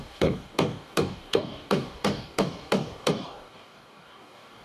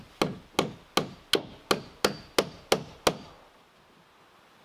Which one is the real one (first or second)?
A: second